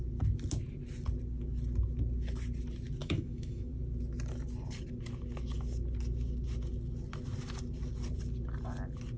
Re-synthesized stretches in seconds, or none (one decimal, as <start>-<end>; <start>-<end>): 3.0-3.7

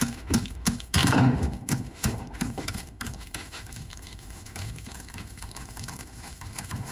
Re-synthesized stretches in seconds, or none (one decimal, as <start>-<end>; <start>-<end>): 0.0-6.9